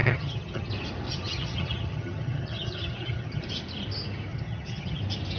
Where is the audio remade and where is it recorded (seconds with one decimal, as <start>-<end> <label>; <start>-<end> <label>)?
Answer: 0.0-0.7 remade; 0.7-1.1 recorded; 1.1-3.4 remade; 3.4-4.3 recorded; 4.3-5.0 remade; 5.0-5.4 recorded